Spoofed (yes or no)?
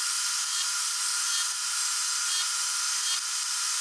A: no